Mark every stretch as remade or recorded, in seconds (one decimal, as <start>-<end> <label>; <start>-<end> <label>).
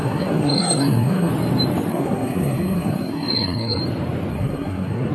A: 0.0-1.3 remade; 1.3-1.9 recorded; 1.9-3.8 remade; 3.8-4.3 recorded; 4.3-5.1 remade